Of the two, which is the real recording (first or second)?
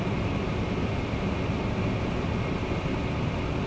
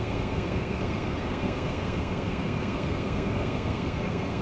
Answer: first